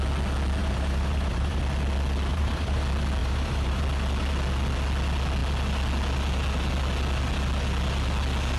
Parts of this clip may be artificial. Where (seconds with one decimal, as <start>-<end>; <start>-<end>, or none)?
0.6-1.6; 2.3-2.8; 3.2-3.8